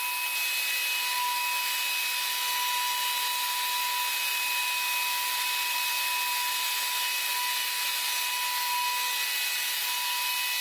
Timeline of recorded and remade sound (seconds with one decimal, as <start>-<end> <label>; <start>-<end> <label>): 0.0-10.6 recorded